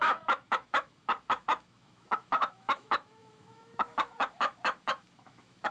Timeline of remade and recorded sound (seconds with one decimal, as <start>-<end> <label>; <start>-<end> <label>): 0.0-5.7 remade